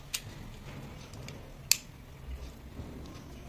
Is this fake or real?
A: real